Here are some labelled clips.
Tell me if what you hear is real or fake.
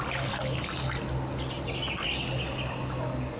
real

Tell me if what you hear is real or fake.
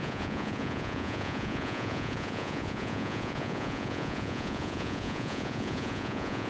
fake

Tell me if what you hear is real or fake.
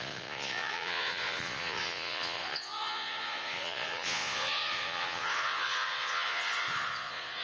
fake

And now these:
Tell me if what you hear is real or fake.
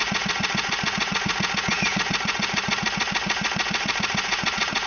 fake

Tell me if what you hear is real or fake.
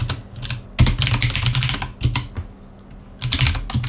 real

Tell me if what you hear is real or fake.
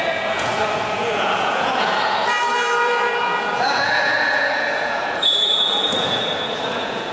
fake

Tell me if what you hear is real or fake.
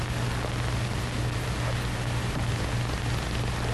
real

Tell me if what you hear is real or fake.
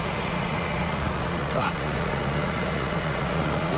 fake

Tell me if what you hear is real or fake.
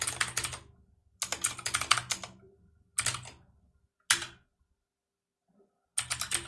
real